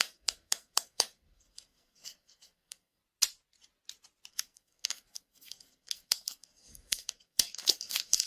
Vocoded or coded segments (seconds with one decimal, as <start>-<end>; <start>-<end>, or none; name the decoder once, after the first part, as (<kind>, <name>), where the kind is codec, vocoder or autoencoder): 0.0-3.0 (codec, SNAC); 4.3-8.3